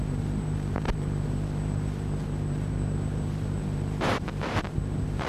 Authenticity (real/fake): fake